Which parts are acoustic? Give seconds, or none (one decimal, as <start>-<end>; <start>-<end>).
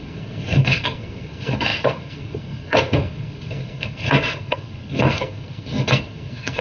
none